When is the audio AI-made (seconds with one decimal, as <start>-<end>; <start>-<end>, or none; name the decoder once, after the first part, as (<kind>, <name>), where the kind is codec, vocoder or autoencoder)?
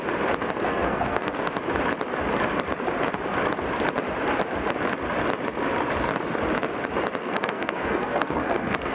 0.7-1.5 (codec, SNAC); 7.2-8.9